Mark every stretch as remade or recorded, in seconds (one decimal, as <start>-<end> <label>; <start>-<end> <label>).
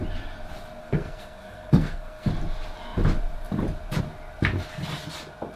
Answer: 0.0-0.8 recorded; 0.8-2.3 remade; 2.3-5.6 recorded